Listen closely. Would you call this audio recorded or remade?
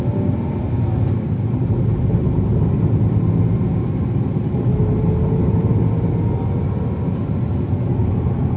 recorded